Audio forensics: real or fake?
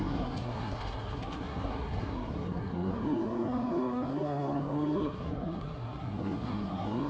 fake